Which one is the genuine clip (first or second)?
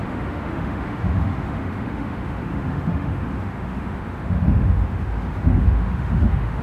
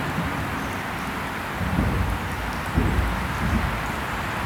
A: second